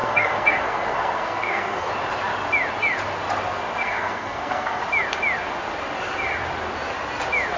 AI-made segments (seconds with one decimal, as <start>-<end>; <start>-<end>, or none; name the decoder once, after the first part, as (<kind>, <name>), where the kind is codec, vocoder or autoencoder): 0.0-1.9 (codec, SNAC); 3.8-4.8